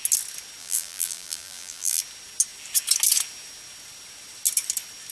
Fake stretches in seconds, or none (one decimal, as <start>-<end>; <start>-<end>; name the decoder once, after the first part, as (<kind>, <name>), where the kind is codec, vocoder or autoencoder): 0.6-2.0 (vocoder, BigVGAN v2)